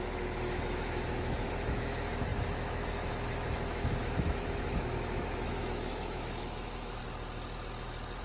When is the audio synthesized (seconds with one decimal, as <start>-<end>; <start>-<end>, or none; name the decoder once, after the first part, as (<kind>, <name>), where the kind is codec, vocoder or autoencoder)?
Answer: 0.0-7.0 (autoencoder, DAC-VAE)